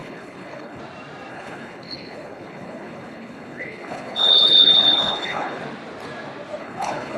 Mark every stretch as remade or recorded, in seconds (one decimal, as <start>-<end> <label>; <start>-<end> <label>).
0.0-0.8 remade; 0.8-1.3 recorded; 1.3-5.6 remade; 5.6-6.6 recorded; 6.6-7.2 remade